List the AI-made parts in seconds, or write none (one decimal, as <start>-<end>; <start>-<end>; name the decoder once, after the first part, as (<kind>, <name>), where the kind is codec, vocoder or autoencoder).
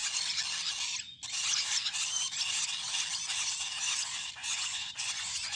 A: 4.4-5.6 (vocoder, Vocos)